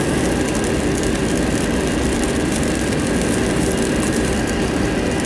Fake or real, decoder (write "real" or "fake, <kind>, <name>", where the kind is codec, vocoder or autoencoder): real